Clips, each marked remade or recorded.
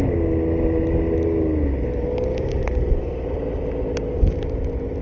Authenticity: recorded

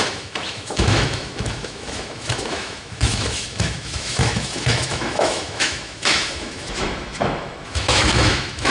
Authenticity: remade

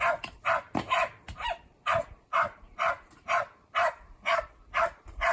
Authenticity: remade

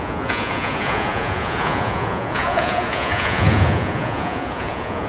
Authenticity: remade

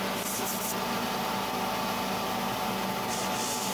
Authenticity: recorded